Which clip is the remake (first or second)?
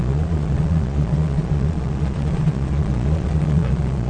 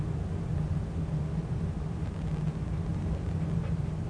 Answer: first